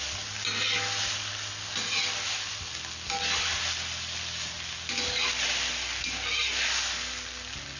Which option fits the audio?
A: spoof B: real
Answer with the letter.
B